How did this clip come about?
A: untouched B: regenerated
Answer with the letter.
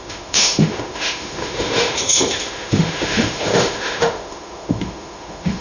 B